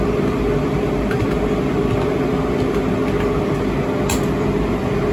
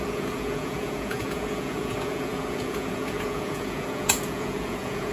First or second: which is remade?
second